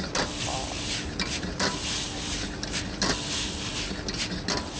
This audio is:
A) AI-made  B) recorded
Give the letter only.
B